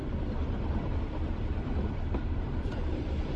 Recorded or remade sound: recorded